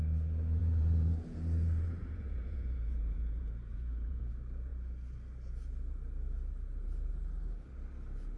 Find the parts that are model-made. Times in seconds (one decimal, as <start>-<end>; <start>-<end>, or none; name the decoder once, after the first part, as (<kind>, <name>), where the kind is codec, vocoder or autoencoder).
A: 0.6-4.3 (vocoder, Vocos)